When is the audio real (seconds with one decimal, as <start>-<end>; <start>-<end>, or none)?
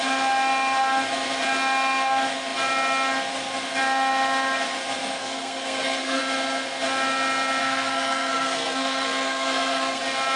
0.0-5.2; 6.2-7.6; 10.0-10.4